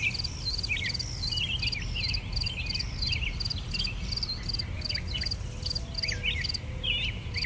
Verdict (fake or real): real